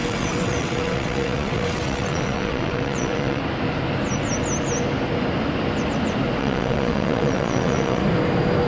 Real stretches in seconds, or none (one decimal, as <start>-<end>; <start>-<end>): 3.4-6.4; 8.0-8.7